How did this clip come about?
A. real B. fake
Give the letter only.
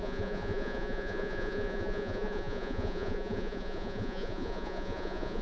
B